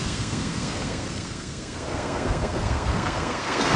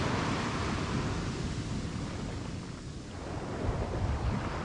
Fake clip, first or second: first